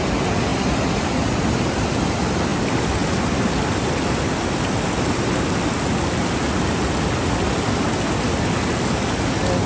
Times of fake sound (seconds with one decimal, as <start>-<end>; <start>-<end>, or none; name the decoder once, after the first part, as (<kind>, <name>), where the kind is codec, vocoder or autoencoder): none